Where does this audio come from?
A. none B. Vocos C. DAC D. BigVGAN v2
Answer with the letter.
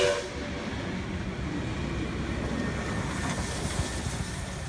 A